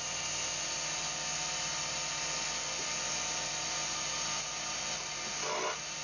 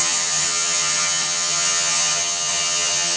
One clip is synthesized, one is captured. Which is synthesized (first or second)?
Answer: second